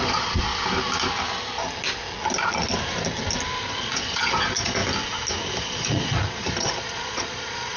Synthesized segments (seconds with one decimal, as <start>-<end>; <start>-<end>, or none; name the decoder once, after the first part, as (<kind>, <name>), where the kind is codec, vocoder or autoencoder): 0.0-0.5 (vocoder, Vocos); 3.6-4.8; 5.6-7.8

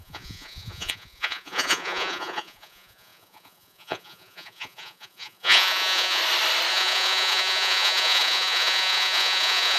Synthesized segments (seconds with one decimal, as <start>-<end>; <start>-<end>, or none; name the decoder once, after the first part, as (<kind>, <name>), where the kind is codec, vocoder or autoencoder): 0.0-6.2 (vocoder, Vocos); 6.7-9.8